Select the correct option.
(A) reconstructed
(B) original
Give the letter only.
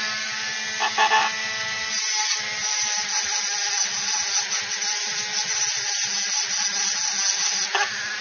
B